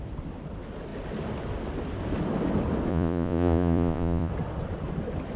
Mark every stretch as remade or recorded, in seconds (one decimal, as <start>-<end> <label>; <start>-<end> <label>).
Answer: 0.0-2.9 recorded; 2.9-4.3 remade; 4.3-5.4 recorded